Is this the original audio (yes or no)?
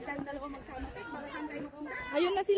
yes